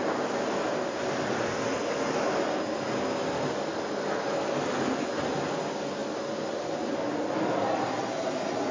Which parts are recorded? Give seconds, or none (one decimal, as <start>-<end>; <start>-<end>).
0.0-8.7